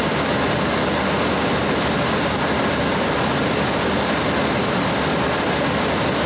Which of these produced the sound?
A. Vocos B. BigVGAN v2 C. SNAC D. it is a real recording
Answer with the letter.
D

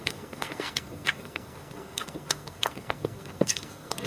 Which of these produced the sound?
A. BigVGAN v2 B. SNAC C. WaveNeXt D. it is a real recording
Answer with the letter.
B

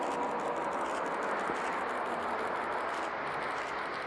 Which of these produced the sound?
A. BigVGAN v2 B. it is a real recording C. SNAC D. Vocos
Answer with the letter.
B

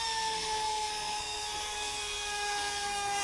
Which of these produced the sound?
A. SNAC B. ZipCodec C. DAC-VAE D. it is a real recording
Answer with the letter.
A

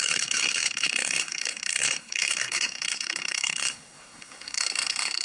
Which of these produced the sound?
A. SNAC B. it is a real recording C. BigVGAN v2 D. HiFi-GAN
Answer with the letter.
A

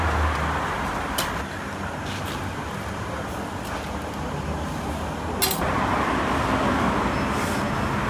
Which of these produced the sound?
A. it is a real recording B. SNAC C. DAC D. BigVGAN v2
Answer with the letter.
A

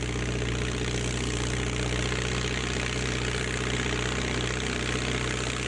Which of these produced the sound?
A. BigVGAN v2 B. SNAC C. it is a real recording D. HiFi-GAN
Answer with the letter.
C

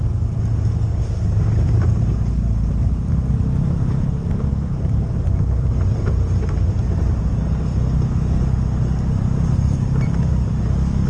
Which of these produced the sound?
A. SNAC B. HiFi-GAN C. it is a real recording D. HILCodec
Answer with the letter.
C